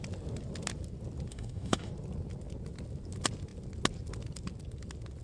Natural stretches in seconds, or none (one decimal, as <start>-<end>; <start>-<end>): 0.0-1.3; 1.9-5.2